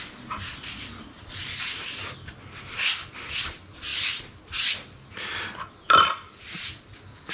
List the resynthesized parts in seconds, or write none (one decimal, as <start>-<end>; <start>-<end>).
none